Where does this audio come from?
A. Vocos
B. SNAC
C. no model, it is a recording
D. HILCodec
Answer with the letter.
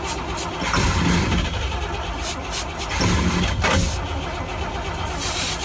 C